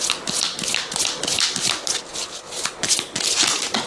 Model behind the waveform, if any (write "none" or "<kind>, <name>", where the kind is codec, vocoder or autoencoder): none